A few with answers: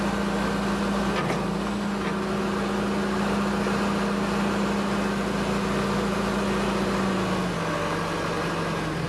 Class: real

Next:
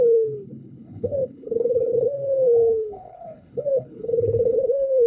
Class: fake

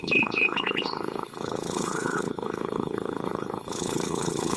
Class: fake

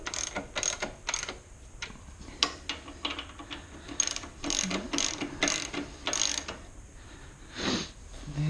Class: real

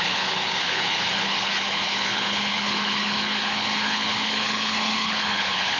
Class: fake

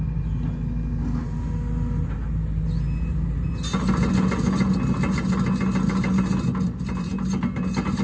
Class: real